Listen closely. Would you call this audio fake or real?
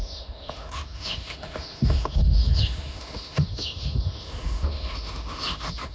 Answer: fake